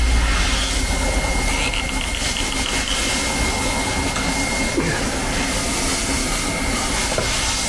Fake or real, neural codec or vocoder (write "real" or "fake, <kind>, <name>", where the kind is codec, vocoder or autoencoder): real